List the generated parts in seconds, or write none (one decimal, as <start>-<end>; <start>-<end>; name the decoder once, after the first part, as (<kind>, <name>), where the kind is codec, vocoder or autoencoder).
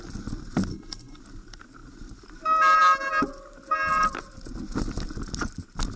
0.7-1.2 (codec, HILCodec)